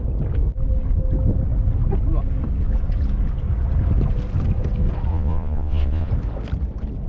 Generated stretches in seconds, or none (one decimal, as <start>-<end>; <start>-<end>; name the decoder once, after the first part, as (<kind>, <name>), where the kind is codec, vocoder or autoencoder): 5.1-6.1 (vocoder, Vocos)